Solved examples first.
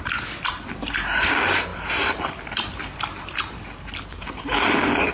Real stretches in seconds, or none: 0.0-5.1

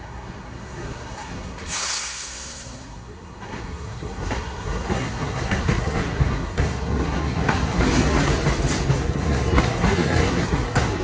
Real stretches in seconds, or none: 8.3-8.9

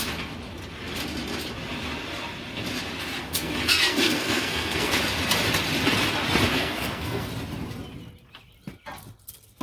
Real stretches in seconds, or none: 0.0-3.2; 5.0-6.5; 7.3-9.6

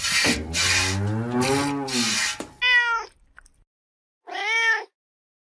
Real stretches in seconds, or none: 0.0-5.5

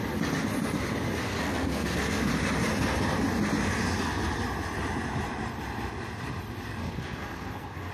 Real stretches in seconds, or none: 0.0-1.3; 2.3-6.8

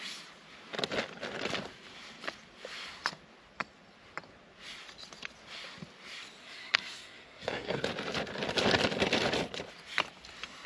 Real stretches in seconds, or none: 0.0-6.4; 7.8-10.7

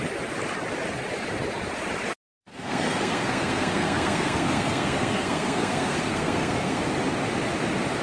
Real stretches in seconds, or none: 0.0-2.5; 6.8-8.0

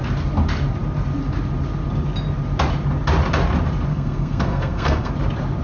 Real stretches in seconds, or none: 0.0-3.9; 5.1-5.6